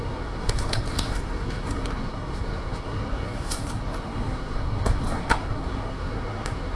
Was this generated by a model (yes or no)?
yes